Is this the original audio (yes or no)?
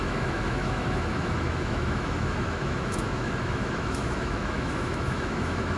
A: no